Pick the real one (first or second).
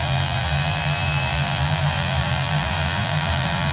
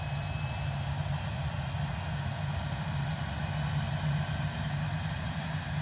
second